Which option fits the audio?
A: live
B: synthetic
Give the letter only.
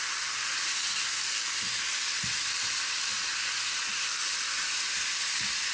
A